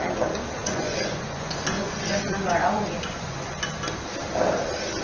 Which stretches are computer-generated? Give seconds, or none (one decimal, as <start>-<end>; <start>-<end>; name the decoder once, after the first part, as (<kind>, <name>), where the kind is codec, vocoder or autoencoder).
0.6-3.6 (vocoder, Vocos)